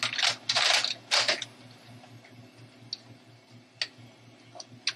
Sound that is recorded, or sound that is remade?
recorded